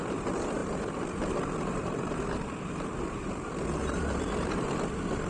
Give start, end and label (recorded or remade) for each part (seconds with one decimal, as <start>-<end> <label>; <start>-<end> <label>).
0.0-5.3 remade